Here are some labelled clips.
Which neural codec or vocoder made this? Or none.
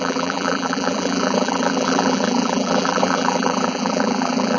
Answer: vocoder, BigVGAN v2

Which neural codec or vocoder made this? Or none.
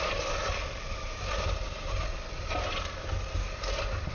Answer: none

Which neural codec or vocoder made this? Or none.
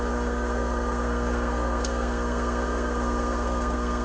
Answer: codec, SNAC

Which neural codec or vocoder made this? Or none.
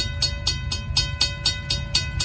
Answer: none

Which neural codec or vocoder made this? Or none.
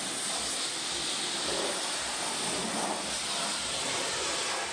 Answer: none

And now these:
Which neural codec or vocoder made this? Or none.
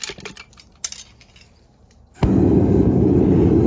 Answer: none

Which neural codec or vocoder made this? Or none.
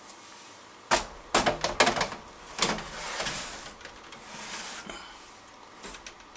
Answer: none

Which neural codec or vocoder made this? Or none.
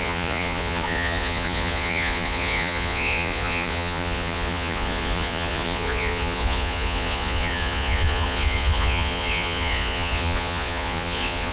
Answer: vocoder, Vocos